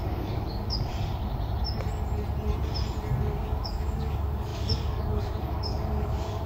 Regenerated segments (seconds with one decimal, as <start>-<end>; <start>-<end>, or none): 0.0-0.9; 3.2-6.5